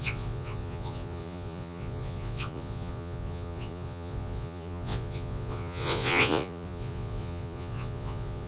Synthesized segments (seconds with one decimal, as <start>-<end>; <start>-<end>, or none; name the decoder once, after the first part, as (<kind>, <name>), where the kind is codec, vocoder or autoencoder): 0.0-8.5 (vocoder, Vocos)